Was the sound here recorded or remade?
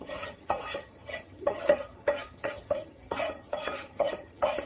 remade